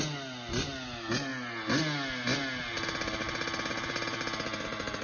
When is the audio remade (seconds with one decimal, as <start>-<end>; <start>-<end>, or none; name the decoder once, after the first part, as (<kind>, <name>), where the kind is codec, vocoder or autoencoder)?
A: none